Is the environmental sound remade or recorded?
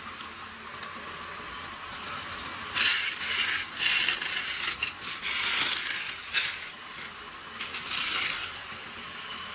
recorded